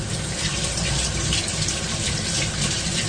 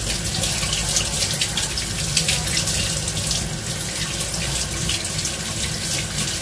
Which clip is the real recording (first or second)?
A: second